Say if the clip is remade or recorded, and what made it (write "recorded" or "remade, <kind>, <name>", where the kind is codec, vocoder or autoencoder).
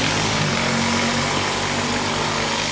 recorded